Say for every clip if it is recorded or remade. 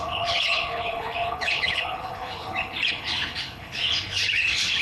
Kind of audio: remade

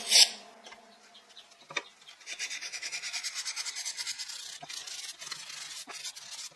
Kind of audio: recorded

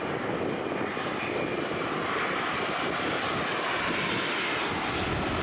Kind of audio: recorded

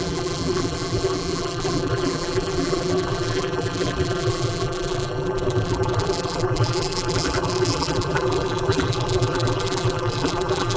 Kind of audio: remade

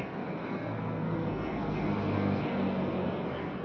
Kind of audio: remade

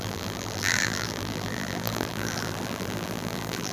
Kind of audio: remade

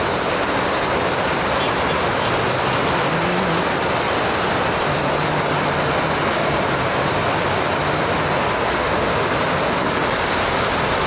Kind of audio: recorded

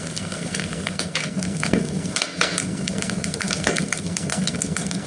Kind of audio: remade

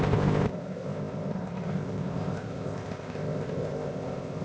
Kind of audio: remade